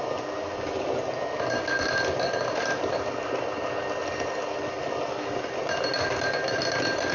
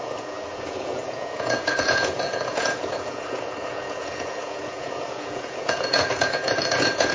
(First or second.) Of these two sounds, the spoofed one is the second